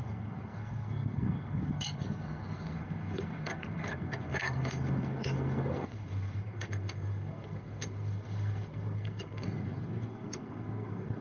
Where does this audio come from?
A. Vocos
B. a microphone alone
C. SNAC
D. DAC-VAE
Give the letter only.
C